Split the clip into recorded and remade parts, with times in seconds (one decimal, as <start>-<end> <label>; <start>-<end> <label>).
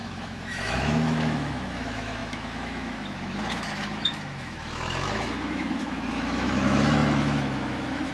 0.0-8.1 remade